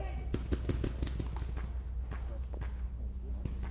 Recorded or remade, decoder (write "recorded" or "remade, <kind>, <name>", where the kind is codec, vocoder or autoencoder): recorded